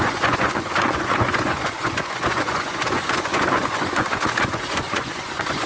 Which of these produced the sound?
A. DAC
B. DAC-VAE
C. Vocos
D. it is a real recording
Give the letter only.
C